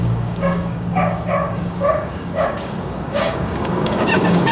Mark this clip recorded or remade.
remade